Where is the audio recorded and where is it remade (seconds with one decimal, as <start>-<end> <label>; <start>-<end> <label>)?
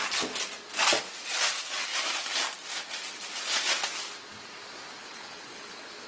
0.0-5.0 recorded; 5.0-6.1 remade